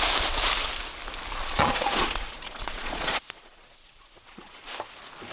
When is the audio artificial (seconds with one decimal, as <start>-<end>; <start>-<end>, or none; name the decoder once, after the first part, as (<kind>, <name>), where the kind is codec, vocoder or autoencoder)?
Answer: 1.4-4.6 (vocoder, Vocos)